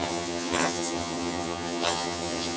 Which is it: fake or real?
fake